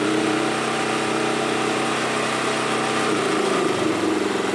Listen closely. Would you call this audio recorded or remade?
remade